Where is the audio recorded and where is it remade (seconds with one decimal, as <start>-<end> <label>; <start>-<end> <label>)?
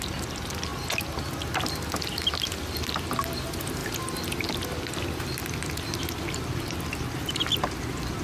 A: 0.0-8.2 recorded